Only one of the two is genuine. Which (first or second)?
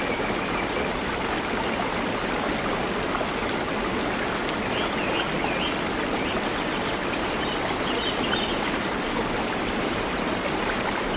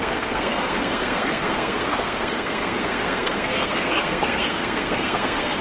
first